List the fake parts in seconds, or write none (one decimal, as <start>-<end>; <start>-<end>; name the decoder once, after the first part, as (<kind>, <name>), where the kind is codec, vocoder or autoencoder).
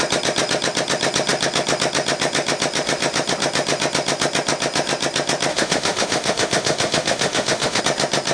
5.5-7.8 (autoencoder, DAC-VAE)